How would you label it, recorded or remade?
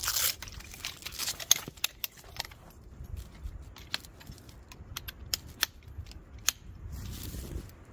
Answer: recorded